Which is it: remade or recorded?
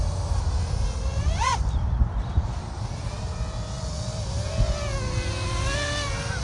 recorded